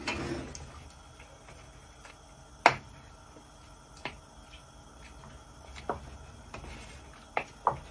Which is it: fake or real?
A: real